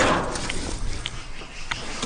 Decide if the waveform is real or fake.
real